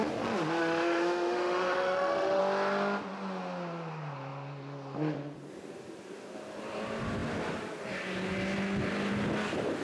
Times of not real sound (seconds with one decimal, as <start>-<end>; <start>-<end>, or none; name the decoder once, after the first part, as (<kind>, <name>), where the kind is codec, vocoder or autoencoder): 0.6-2.4 (autoencoder, DAC-VAE)